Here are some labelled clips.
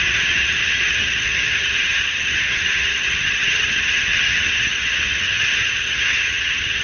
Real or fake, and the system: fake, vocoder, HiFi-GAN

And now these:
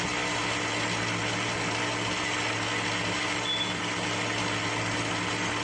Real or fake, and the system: real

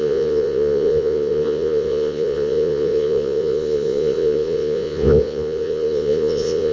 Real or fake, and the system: fake, vocoder, Vocos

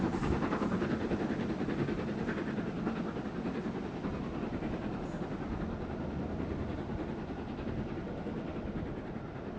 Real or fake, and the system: real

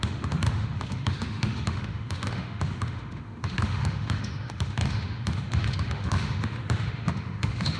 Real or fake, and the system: fake, autoencoder, DAC-VAE